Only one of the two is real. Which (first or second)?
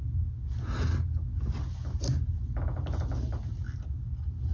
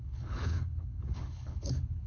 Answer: first